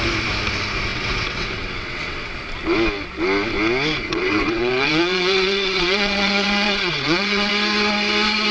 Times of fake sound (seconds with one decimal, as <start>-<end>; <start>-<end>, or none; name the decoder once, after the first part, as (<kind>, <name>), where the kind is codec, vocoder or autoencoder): 0.9-2.3 (vocoder, WaveNeXt); 4.1-7.5